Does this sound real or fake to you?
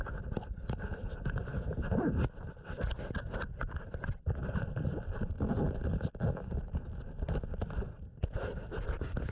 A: real